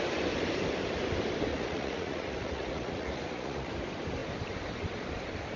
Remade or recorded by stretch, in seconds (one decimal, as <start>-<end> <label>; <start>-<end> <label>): 0.0-1.5 recorded; 1.5-3.7 remade; 3.7-5.6 recorded